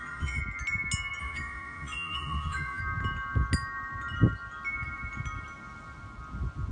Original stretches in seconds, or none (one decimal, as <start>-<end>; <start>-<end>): 0.4-1.2; 2.8-6.7